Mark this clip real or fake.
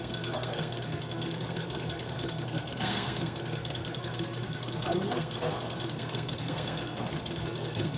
fake